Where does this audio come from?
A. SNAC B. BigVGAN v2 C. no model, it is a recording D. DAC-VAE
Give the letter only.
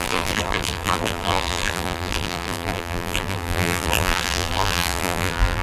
B